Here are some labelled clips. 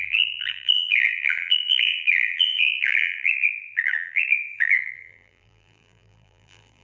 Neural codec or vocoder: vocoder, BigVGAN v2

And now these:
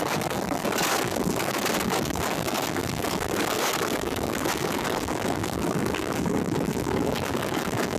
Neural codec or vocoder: codec, DAC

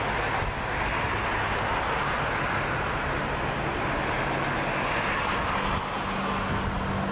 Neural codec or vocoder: none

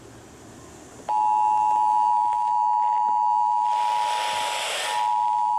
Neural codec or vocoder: none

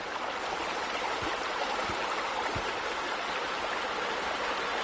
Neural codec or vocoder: none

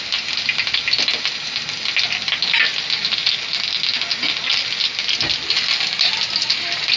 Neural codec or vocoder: none